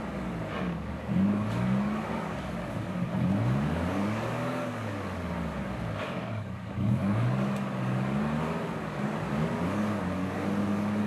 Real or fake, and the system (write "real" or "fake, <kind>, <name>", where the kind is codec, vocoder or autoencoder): fake, codec, DAC